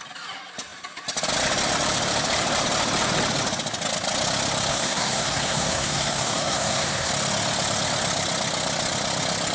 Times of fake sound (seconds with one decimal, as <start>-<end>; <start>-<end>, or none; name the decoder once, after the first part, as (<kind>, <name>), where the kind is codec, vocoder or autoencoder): 4.7-7.1 (codec, SNAC)